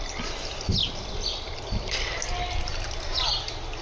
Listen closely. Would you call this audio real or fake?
real